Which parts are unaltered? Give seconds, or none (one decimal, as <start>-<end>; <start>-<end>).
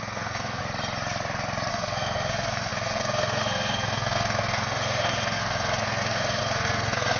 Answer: 0.6-1.7